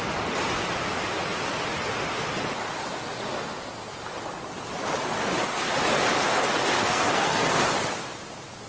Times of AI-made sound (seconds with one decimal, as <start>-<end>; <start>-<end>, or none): 6.8-7.6